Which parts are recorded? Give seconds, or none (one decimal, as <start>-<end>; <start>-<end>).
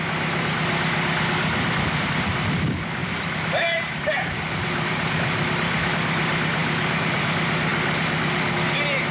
0.0-3.0; 5.9-6.6; 7.2-7.7; 8.5-9.1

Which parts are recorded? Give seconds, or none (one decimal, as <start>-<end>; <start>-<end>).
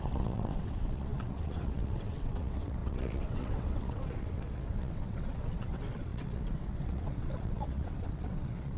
none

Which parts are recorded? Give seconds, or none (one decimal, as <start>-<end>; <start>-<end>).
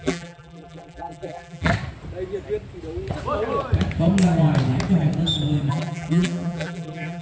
1.7-5.7